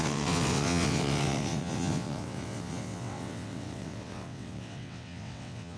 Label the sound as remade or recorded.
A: remade